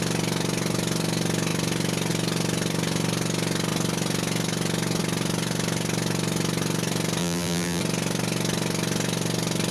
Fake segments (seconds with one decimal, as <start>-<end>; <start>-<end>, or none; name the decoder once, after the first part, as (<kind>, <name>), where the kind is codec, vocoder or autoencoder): 7.2-7.8 (vocoder, BigVGAN v2)